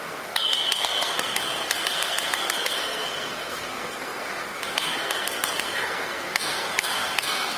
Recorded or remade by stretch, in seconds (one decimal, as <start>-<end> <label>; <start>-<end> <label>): 0.0-7.6 remade